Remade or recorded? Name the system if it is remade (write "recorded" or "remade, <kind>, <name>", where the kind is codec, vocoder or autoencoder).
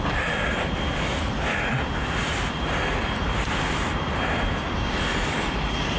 recorded